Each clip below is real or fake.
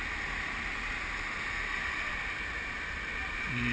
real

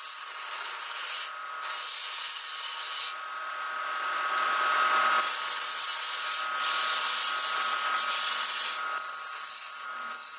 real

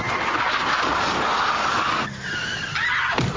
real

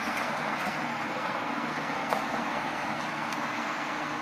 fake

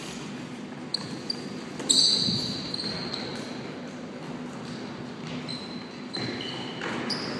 real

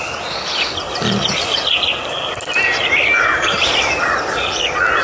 real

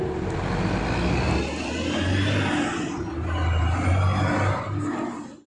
real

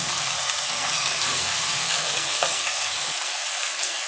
fake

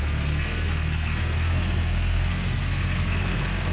fake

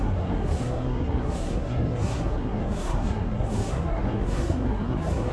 fake